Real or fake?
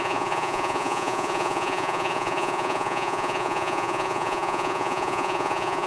fake